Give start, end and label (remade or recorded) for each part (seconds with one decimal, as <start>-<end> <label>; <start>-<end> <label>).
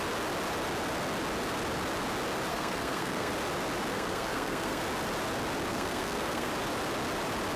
0.0-2.5 recorded; 2.5-3.3 remade; 3.3-3.9 recorded; 3.9-4.8 remade; 4.8-5.7 recorded; 5.7-6.5 remade; 6.5-7.6 recorded